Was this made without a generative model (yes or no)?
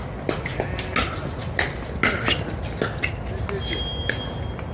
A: yes